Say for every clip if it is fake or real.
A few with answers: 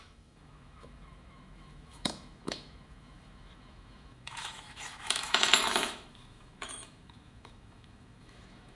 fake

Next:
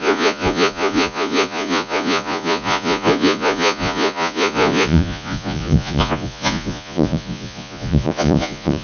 fake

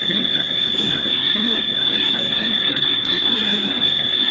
fake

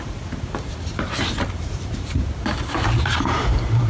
fake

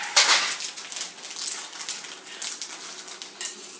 real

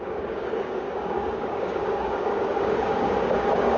fake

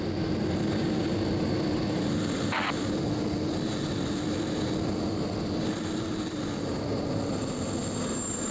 real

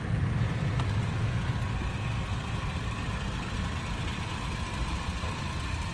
real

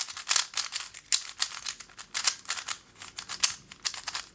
real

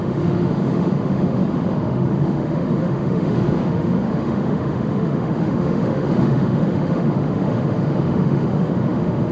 fake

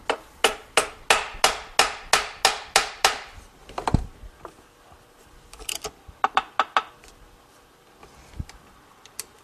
real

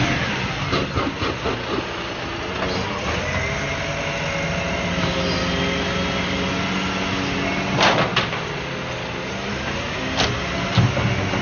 real